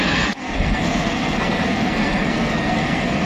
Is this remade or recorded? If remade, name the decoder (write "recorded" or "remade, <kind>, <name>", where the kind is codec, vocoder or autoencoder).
remade, codec, SNAC